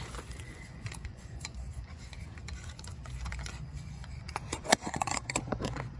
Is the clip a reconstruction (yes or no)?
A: yes